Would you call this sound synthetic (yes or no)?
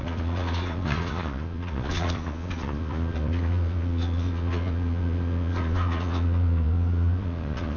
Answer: yes